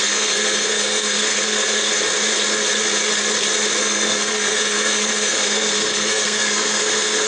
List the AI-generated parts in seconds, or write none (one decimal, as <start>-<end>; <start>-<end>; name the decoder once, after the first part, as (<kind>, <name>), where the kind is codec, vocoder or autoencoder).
0.0-1.9 (codec, SNAC); 3.8-7.3